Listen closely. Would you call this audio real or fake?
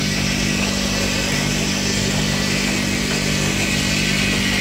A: real